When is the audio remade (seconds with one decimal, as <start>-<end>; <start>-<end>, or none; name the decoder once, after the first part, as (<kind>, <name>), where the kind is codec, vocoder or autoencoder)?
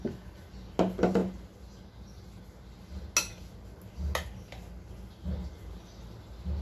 none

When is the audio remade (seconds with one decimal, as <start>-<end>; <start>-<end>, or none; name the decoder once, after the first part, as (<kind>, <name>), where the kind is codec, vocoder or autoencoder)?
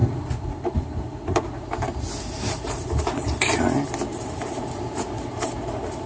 0.0-3.6 (vocoder, BigVGAN v2); 4.1-6.1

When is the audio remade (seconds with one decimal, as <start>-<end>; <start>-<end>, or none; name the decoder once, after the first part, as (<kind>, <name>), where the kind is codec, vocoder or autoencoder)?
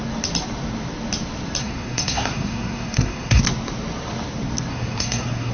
1.6-3.4 (codec, SNAC); 4.7-5.5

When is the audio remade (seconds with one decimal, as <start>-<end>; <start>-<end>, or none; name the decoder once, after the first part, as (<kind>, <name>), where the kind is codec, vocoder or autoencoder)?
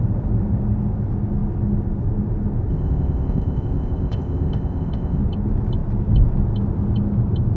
2.7-5.2 (codec, ZipCodec)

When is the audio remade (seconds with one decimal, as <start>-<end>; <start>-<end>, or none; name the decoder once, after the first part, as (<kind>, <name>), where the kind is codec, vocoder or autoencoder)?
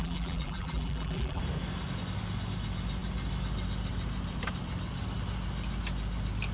0.0-1.4 (vocoder, BigVGAN v2)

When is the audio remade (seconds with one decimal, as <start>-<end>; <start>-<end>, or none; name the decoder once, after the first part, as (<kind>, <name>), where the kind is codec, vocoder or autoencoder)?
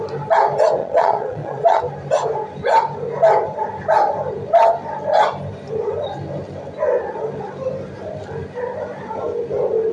0.8-1.8 (vocoder, Vocos)